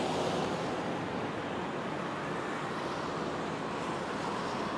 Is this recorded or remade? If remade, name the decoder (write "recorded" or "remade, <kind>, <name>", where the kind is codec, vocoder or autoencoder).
recorded